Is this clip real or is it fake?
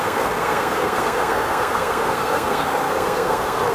fake